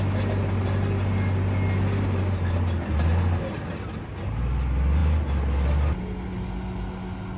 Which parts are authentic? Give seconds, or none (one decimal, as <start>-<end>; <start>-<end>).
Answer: 0.0-7.4